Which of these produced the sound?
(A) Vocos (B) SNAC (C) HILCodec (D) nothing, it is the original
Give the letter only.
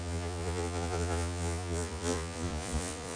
A